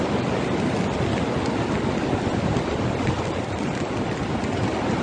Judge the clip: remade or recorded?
recorded